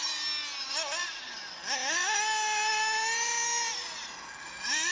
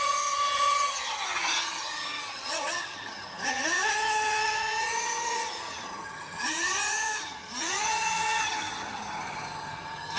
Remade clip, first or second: second